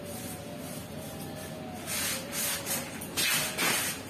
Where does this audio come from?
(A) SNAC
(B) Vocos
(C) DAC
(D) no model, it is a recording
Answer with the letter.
D